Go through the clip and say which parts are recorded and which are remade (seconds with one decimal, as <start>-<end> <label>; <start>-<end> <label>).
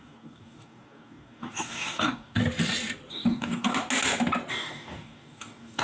0.0-2.4 remade; 2.4-3.1 recorded; 3.1-3.7 remade; 3.7-4.5 recorded; 4.5-5.8 remade